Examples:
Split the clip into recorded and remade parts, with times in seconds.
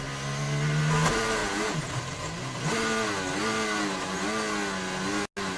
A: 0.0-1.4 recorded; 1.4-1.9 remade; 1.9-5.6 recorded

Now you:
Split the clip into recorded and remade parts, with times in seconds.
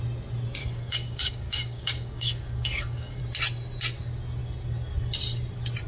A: 0.0-0.6 recorded; 0.6-3.2 remade; 3.2-5.9 recorded